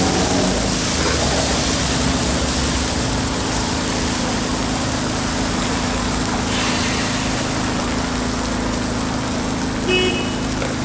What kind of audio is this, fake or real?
real